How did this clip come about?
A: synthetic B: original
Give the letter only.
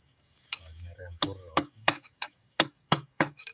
A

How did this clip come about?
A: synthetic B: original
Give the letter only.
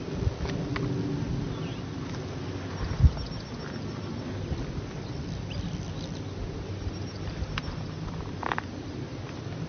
B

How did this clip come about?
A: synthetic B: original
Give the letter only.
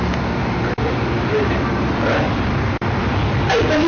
B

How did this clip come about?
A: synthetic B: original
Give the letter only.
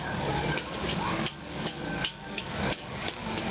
A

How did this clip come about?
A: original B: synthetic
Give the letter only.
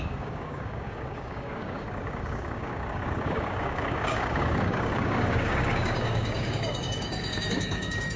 B